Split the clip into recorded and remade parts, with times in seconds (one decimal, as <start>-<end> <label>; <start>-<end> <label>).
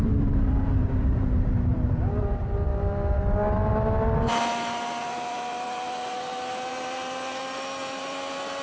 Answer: 0.0-8.6 remade